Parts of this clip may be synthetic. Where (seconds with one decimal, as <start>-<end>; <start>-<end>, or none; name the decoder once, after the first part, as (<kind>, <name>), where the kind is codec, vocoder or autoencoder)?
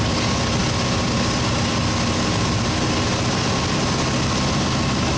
none